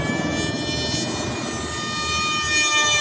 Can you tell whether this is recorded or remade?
recorded